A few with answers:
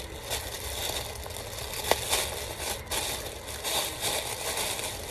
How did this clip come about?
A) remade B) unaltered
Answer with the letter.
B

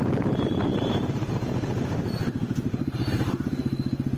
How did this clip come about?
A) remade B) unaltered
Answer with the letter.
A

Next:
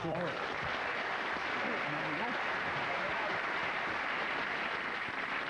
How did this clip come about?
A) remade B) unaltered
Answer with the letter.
B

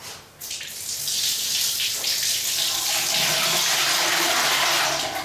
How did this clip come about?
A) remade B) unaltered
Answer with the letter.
A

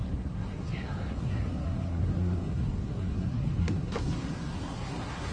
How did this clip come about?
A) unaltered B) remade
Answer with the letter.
B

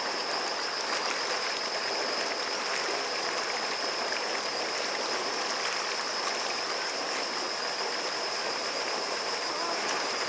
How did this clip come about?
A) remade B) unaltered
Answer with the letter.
B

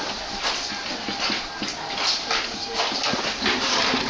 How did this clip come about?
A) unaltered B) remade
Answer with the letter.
A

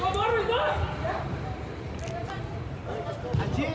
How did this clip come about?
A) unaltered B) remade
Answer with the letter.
A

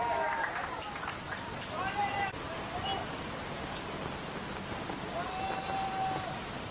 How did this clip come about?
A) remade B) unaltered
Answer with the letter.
B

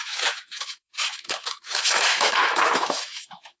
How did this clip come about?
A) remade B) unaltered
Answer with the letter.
A